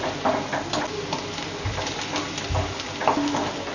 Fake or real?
real